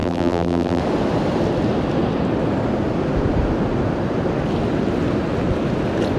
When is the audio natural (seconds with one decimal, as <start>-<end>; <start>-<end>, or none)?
0.8-6.2